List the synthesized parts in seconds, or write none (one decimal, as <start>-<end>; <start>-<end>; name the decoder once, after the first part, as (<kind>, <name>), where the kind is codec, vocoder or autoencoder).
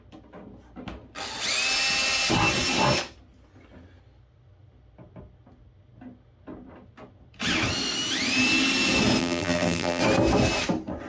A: 9.2-10.0 (vocoder, BigVGAN v2)